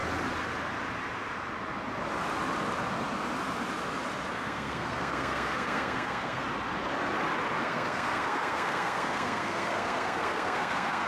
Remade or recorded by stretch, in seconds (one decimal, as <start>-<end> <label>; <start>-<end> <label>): 0.0-4.3 recorded; 4.3-6.4 remade; 6.4-7.6 recorded; 7.6-11.1 remade